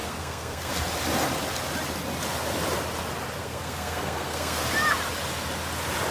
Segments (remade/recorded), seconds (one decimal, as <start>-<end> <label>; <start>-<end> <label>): 0.0-0.7 remade; 0.7-3.4 recorded; 3.4-4.6 remade; 4.6-6.1 recorded